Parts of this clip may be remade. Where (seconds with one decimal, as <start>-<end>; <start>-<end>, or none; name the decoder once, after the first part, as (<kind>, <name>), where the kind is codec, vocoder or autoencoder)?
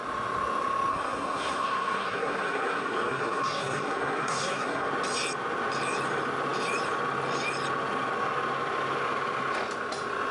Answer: 0.9-4.9 (codec, SNAC)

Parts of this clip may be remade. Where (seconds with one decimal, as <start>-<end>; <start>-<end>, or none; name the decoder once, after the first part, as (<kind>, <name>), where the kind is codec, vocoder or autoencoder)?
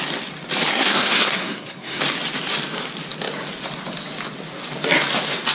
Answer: 0.7-2.0 (codec, SNAC)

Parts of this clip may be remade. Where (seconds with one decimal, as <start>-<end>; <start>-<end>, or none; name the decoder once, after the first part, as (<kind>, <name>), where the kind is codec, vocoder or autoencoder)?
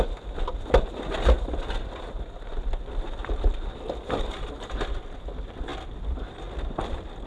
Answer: none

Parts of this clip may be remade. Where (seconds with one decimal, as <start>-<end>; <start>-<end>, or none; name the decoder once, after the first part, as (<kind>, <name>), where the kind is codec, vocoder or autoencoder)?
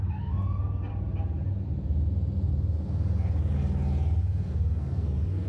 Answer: 0.0-0.9 (codec, SNAC); 4.2-5.5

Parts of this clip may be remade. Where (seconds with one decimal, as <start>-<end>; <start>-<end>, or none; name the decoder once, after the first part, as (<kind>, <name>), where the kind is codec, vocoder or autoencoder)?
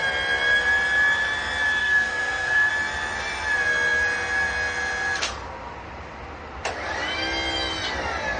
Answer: 1.8-2.7 (codec, SNAC)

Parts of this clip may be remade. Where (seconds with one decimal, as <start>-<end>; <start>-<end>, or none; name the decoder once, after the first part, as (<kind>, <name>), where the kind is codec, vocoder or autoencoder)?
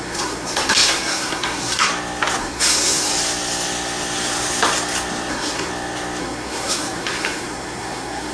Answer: 0.0-1.9 (codec, SNAC); 2.4-3.1; 5.3-5.7; 6.2-8.3